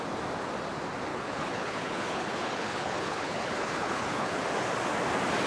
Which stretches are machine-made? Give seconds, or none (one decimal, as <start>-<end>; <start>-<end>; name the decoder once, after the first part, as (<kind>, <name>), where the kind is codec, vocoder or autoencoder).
1.1-4.4 (codec, HILCodec)